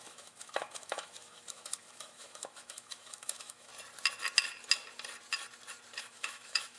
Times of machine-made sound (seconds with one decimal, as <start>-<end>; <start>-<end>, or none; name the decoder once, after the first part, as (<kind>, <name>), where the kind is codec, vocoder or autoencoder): 0.0-3.7 (autoencoder, DAC-VAE); 6.0-6.8

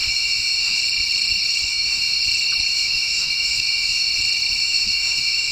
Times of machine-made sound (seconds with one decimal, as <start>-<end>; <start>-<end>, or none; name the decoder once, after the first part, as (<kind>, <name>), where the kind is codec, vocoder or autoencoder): 0.0-0.8 (autoencoder, DAC-VAE); 1.7-2.2; 2.7-4.1; 4.6-5.5

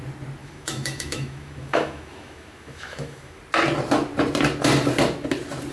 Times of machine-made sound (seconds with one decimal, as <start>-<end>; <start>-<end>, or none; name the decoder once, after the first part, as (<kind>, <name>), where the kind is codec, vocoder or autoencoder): 0.4-3.4 (autoencoder, DAC-VAE)